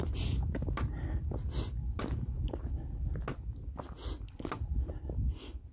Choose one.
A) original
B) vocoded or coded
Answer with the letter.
A